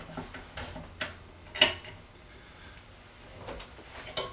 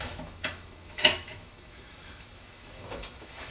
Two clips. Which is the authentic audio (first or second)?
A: first